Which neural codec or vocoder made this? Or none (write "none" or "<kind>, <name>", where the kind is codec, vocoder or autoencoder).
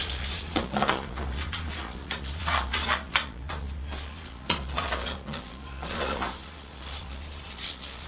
vocoder, Vocos